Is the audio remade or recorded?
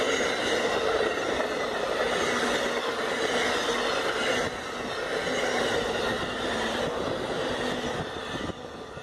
recorded